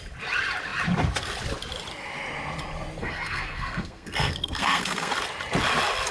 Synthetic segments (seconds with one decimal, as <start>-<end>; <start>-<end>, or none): 3.0-5.1